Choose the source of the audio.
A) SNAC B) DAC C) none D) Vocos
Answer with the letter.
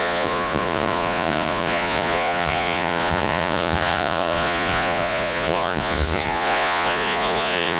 D